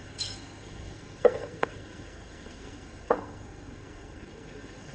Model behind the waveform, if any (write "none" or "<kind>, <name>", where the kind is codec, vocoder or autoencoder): codec, SNAC